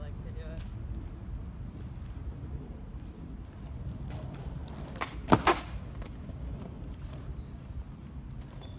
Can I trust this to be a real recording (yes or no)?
yes